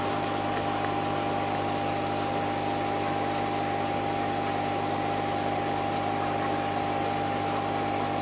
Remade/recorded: recorded